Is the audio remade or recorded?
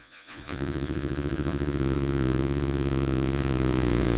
remade